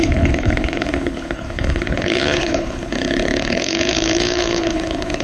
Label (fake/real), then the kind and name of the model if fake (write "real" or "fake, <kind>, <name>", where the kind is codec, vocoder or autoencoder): fake, codec, HILCodec